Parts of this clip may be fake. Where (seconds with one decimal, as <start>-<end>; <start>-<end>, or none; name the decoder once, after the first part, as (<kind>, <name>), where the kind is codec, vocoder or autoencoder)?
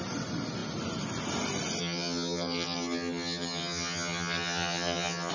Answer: 1.8-5.3 (vocoder, HiFi-GAN)